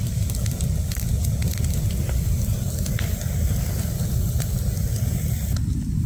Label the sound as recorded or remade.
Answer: recorded